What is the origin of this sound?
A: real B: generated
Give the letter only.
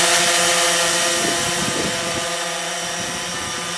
A